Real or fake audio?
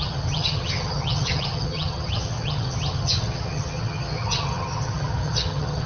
fake